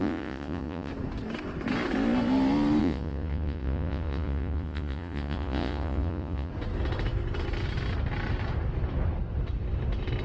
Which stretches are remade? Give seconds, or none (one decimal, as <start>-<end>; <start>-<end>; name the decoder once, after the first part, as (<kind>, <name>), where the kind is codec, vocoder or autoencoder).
0.0-0.9 (vocoder, Vocos); 2.8-6.5